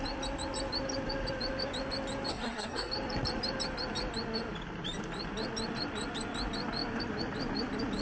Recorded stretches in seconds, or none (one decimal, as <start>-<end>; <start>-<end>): 0.0-2.3; 2.9-8.0